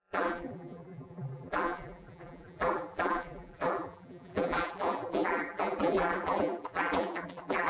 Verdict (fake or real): fake